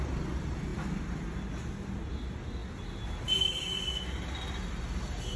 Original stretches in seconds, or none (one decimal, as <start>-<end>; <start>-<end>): 0.0-5.4

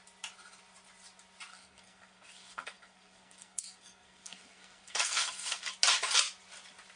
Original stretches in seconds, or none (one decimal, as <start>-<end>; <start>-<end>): 0.0-1.5; 5.7-7.0

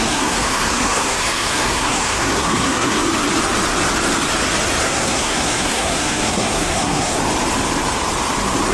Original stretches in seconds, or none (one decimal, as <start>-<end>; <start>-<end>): 3.0-4.8; 7.2-8.7

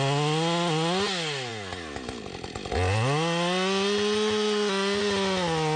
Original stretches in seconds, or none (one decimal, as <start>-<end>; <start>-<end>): 0.0-5.8

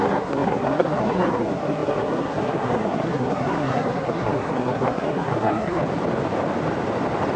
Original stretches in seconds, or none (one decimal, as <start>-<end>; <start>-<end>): 5.8-7.4

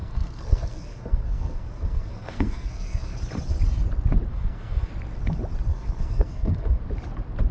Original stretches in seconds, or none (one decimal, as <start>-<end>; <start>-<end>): 3.2-4.3; 4.9-5.7; 6.8-7.5